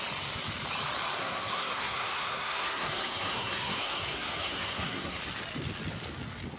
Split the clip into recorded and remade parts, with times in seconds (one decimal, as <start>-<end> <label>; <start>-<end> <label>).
0.0-1.2 recorded; 1.2-5.2 remade; 5.2-6.6 recorded